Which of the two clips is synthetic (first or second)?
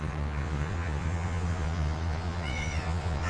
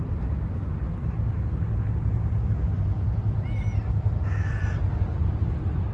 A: first